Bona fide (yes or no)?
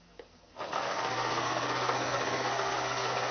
no